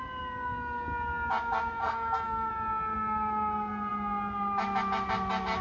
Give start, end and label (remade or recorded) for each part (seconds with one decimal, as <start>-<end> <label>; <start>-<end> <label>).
0.0-1.8 recorded; 1.8-2.5 remade; 2.5-5.6 recorded